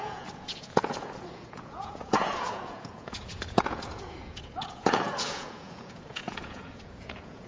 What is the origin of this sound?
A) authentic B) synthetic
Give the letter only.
B